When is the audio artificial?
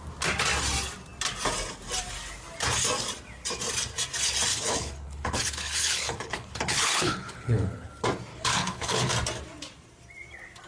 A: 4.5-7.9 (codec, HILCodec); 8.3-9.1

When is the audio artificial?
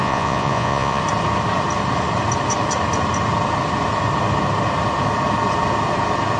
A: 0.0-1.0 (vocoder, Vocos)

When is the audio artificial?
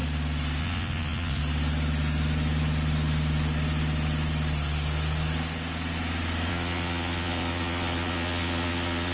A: 0.6-1.4 (vocoder, Vocos); 6.5-9.1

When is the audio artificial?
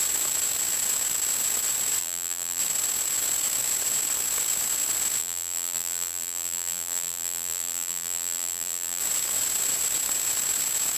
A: 2.0-2.6 (vocoder, BigVGAN v2); 5.2-9.0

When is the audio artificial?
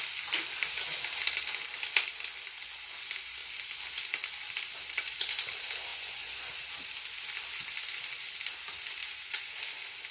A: 5.9-6.5 (vocoder, Vocos); 9.0-9.6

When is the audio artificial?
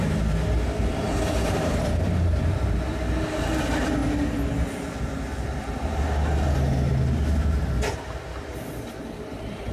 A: 0.0-4.0 (vocoder, BigVGAN v2); 8.9-9.7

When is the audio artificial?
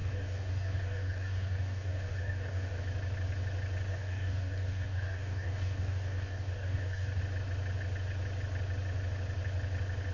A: 0.0-2.8 (codec, DAC); 3.9-7.2